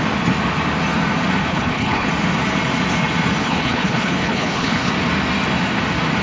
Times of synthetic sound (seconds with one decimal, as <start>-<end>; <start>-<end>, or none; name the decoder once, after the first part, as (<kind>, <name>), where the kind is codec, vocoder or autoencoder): 1.4-2.1 (codec, HILCodec); 3.4-4.9